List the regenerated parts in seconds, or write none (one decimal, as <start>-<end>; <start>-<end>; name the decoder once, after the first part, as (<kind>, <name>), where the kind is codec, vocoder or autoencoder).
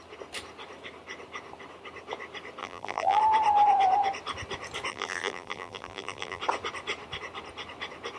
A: 2.6-3.2 (vocoder, BigVGAN v2); 4.9-6.4